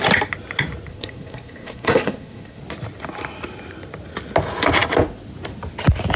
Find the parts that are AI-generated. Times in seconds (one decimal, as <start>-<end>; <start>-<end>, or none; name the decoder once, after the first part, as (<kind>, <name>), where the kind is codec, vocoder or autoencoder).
0.9-2.6 (codec, SNAC)